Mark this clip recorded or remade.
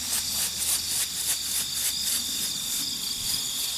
recorded